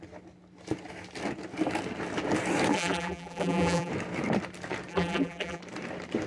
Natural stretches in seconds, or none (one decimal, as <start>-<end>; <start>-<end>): 0.0-2.7; 3.9-4.9; 5.6-6.3